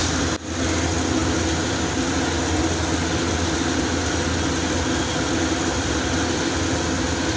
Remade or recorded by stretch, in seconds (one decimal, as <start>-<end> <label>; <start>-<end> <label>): 0.0-7.4 recorded